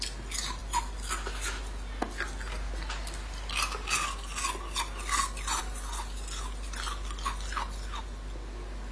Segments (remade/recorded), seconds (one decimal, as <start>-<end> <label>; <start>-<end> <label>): 0.0-8.9 recorded